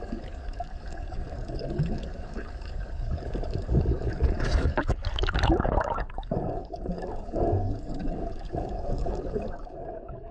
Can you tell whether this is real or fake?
fake